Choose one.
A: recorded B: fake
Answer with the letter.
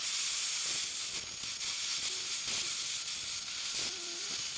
A